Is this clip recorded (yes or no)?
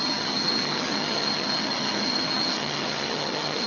no